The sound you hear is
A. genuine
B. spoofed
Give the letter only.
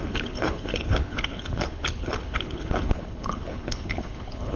B